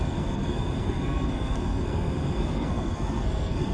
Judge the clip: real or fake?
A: fake